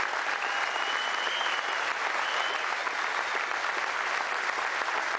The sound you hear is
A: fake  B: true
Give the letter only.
B